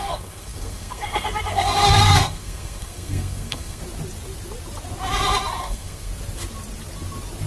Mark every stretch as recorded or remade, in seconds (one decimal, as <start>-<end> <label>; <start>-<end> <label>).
0.0-3.8 remade; 3.8-5.6 recorded; 5.6-6.1 remade; 6.1-7.5 recorded